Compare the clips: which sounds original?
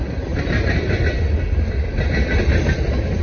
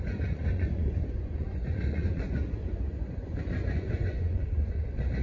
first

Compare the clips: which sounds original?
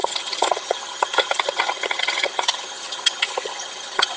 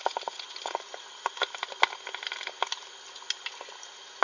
second